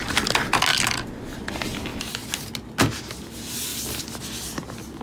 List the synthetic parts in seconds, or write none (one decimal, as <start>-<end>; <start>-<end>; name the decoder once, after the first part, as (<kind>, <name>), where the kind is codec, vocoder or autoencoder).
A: none